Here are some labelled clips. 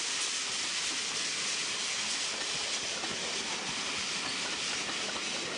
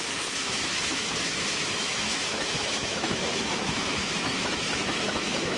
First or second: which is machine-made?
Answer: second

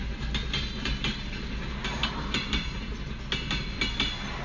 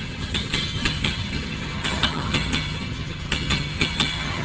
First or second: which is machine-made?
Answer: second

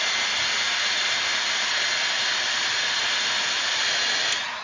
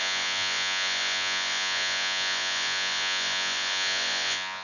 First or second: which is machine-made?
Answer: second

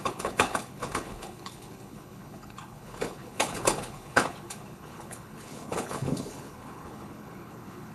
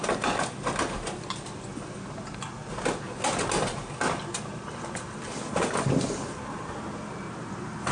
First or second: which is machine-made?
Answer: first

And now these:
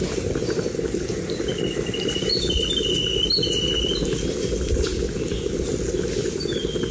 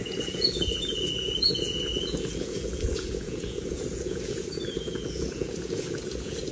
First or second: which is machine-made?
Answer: second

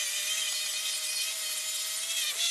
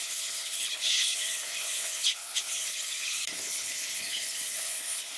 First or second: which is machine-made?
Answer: second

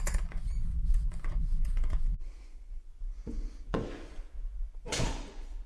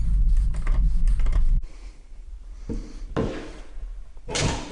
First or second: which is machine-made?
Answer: first